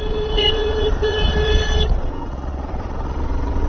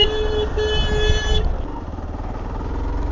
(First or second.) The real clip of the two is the second